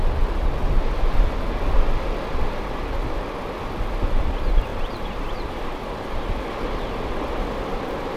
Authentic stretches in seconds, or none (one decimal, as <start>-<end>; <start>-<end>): 0.0-4.7; 6.4-8.2